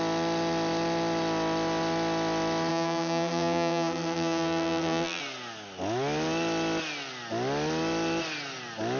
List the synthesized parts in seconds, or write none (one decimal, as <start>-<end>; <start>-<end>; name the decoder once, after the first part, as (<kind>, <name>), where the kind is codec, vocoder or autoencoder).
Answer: 2.7-5.2 (vocoder, BigVGAN v2)